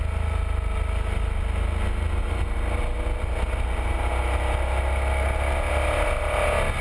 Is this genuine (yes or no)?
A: yes